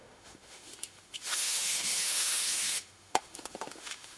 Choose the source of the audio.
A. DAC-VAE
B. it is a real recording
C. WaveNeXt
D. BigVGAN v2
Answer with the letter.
A